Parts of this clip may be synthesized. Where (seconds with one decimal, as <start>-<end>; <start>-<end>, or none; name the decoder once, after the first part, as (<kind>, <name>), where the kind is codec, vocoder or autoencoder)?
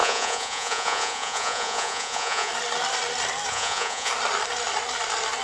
0.0-2.5 (vocoder, Vocos); 3.5-4.1